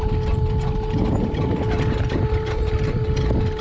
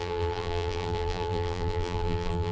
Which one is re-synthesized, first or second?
second